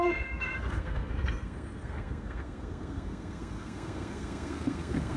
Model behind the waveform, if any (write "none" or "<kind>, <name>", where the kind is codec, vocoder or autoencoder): codec, SNAC